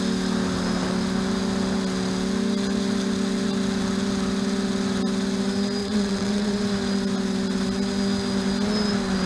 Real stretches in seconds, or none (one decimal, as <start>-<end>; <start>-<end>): 0.0-5.8; 6.6-9.3

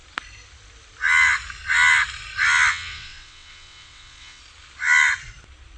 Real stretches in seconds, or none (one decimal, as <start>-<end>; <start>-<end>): 0.0-2.7; 4.4-5.8

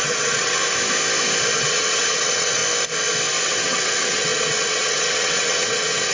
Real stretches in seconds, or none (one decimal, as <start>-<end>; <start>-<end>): 0.6-1.6; 2.6-3.4

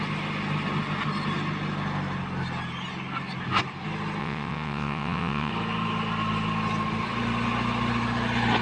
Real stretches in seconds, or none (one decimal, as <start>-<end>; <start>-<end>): 0.0-4.2; 5.5-8.6

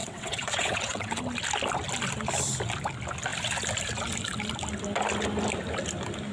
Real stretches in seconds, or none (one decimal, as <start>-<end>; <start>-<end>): 1.2-6.3

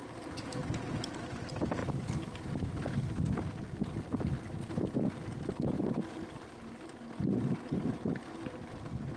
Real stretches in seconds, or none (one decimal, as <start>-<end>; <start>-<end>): 0.0-9.2

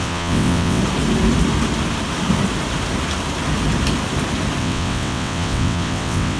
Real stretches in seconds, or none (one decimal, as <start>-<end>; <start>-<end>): 0.8-4.6